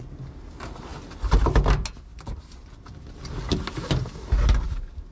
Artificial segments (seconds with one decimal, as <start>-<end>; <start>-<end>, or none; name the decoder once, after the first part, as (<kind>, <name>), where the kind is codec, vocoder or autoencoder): 2.1-3.3 (vocoder, BigVGAN v2)